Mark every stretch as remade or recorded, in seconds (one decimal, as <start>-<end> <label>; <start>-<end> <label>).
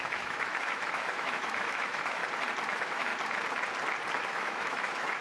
0.0-2.2 remade; 2.2-2.7 recorded; 2.7-3.1 remade; 3.1-4.2 recorded; 4.2-5.2 remade